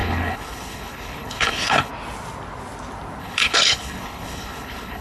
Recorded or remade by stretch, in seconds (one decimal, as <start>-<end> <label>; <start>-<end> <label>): 0.0-1.9 remade; 1.9-3.2 recorded; 3.2-5.0 remade